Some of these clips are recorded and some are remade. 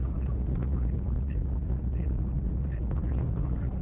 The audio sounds remade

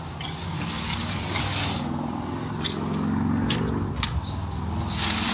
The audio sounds recorded